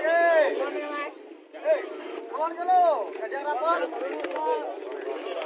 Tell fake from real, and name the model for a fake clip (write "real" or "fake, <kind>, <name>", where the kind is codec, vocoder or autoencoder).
real